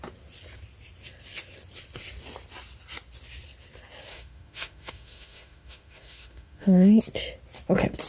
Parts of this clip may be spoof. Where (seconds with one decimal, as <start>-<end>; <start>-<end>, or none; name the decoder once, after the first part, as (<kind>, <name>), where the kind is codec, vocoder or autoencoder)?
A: 4.1-7.0 (autoencoder, DAC-VAE)